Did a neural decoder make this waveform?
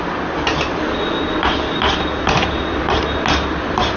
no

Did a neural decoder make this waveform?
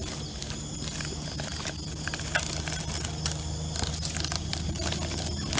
no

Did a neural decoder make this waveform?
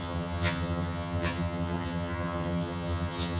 yes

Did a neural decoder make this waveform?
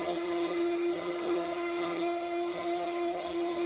yes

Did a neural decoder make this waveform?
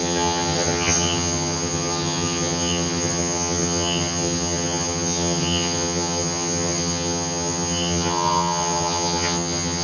yes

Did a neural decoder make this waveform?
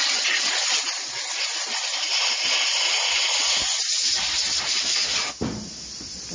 no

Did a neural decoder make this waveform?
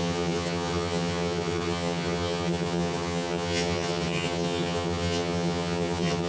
yes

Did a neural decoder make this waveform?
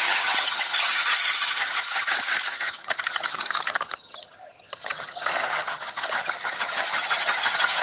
yes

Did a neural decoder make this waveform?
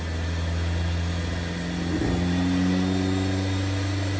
no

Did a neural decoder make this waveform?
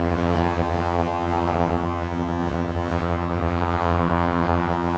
yes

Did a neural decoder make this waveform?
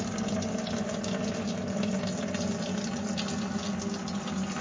no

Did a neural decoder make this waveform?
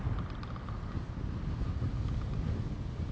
no